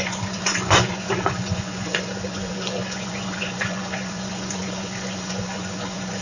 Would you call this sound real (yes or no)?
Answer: no